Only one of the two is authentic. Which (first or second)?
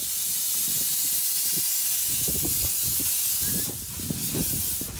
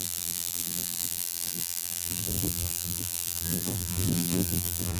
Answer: first